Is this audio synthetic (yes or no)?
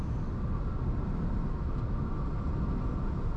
no